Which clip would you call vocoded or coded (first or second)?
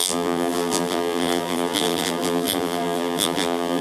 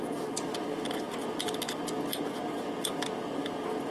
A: first